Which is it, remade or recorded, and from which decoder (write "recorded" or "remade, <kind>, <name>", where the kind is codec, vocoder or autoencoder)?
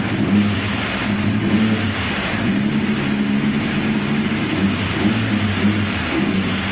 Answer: recorded